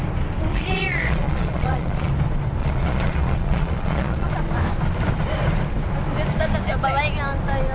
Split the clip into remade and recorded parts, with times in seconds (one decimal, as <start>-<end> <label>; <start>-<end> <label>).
0.0-0.5 recorded; 0.5-2.1 remade; 2.1-2.6 recorded; 2.6-4.3 remade; 4.3-7.7 recorded